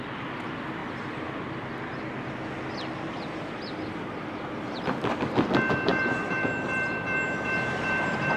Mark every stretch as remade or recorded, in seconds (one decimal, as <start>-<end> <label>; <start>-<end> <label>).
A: 0.0-0.8 recorded; 0.8-1.7 remade; 1.7-5.9 recorded; 5.9-8.4 remade